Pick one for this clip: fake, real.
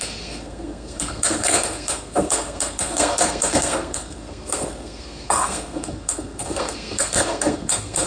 fake